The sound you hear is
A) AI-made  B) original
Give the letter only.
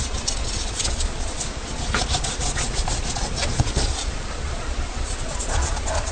A